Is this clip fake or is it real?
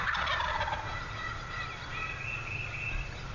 real